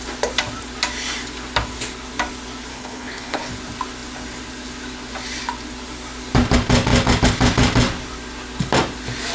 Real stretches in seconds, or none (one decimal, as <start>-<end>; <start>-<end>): 0.0-2.7; 3.5-9.3